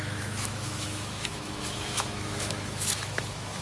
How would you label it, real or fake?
fake